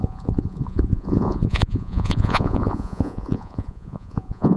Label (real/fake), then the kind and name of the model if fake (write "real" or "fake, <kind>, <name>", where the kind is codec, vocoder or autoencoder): fake, vocoder, Vocos